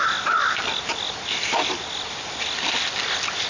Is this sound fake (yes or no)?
no